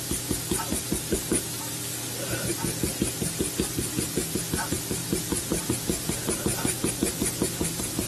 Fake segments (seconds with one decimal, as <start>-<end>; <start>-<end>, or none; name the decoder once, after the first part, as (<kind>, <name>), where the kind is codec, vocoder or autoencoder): none